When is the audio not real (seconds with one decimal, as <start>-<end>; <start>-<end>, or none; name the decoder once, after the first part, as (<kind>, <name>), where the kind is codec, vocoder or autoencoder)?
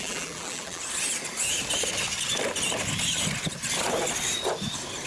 0.0-0.8 (vocoder, BigVGAN v2)